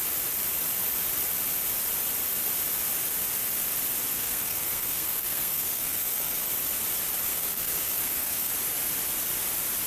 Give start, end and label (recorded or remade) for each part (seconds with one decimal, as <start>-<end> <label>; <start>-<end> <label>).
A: 0.0-4.1 recorded; 4.1-6.5 remade; 6.5-7.3 recorded; 7.3-8.5 remade; 8.5-9.9 recorded